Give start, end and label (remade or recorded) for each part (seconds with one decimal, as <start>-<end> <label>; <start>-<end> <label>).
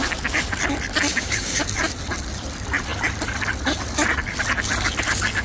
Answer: 0.0-1.1 recorded; 1.1-1.6 remade; 1.6-5.4 recorded